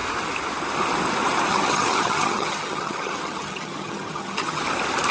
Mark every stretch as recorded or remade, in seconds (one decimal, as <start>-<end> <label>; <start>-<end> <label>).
0.0-1.5 recorded; 1.5-4.6 remade; 4.6-5.1 recorded